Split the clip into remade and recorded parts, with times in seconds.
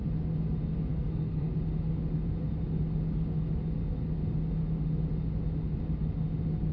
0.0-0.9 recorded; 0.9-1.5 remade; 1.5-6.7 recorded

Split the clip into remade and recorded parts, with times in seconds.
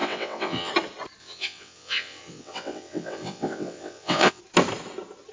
0.0-0.7 remade; 0.7-1.2 recorded; 1.2-4.4 remade; 4.4-5.3 recorded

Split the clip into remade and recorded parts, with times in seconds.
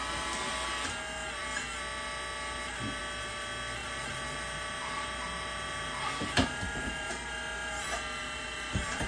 0.0-3.8 recorded; 3.8-7.2 remade; 7.2-8.2 recorded; 8.2-9.1 remade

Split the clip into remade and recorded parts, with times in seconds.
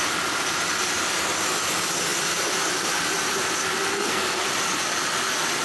0.0-3.9 recorded; 3.9-4.4 remade; 4.4-5.6 recorded